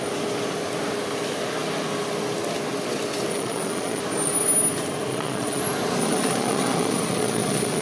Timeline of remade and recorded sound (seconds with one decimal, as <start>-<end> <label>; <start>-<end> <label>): 0.0-3.3 recorded; 3.3-4.0 remade; 4.0-5.1 recorded; 5.1-5.6 remade; 5.6-6.0 recorded; 6.0-7.8 remade